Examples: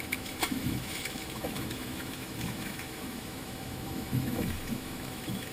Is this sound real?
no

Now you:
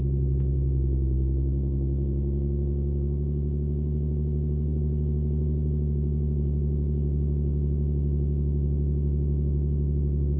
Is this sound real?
no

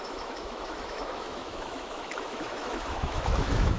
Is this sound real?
no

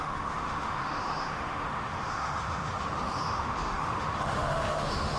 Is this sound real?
no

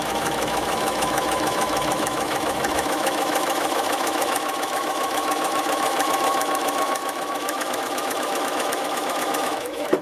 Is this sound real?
no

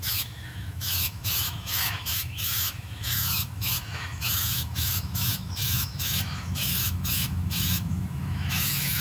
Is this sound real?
no